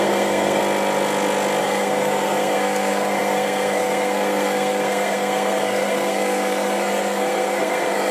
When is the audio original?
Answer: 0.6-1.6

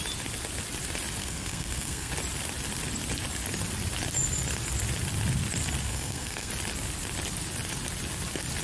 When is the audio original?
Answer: 0.0-1.2; 2.1-5.9; 6.5-8.6

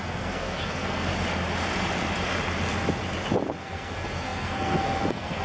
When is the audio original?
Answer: 1.1-3.6

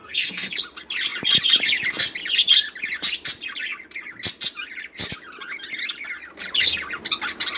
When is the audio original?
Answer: 0.5-7.6